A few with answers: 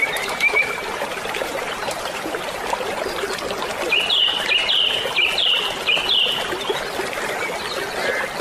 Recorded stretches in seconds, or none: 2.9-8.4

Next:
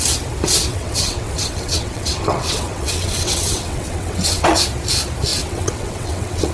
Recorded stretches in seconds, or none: 0.0-0.7; 4.6-5.3

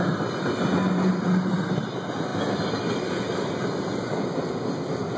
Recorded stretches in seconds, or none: 0.0-5.2

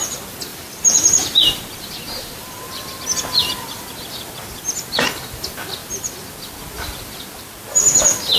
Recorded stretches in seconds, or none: 0.0-0.5; 2.5-5.8; 6.3-8.4

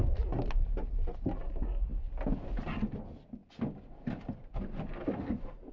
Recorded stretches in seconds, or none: 0.0-5.7

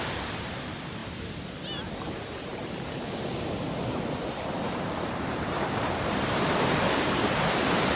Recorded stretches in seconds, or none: 1.0-2.0; 2.5-3.4